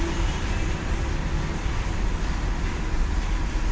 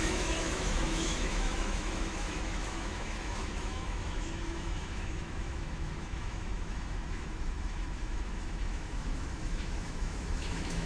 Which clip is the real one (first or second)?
first